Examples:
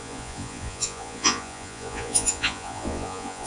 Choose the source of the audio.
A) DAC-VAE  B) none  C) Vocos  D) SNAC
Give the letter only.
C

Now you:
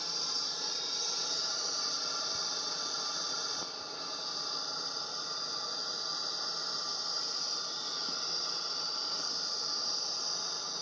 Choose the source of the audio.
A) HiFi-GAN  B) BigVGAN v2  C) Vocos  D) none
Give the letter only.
D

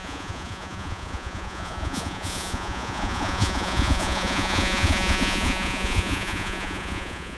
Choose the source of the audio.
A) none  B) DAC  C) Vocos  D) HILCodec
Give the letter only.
C